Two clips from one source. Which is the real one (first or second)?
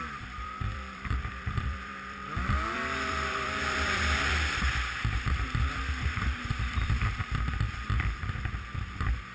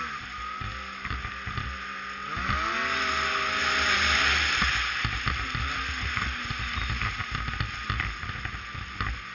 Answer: second